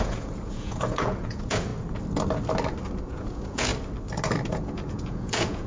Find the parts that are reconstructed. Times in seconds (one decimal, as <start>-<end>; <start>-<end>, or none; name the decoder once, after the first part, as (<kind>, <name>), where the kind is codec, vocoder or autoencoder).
0.0-1.7 (vocoder, Vocos); 3.1-3.7; 4.5-5.7